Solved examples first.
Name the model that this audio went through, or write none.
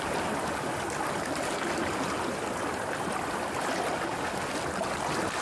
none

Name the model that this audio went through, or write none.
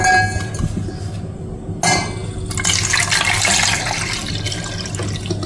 none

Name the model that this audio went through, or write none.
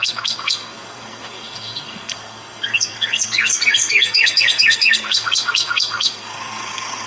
codec, SNAC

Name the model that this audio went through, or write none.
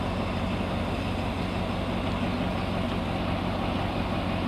none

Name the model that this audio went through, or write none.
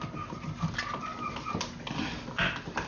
none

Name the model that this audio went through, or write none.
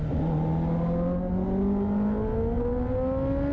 none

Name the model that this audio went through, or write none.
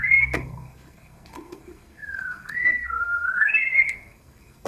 codec, SNAC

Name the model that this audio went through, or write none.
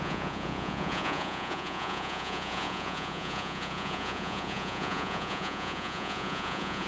vocoder, Vocos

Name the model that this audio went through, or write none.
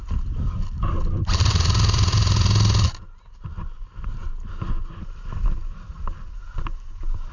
none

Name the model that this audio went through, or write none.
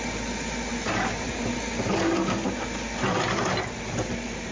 none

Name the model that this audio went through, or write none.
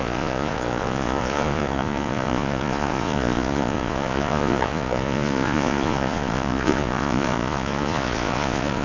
vocoder, Vocos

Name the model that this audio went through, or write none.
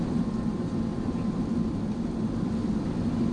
vocoder, BigVGAN v2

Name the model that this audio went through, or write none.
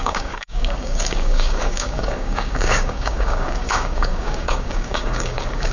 codec, DAC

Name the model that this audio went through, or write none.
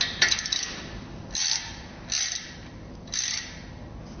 none